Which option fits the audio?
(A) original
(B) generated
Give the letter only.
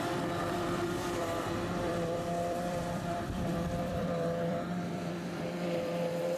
B